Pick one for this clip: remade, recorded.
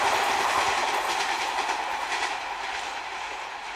recorded